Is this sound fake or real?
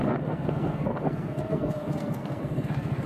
fake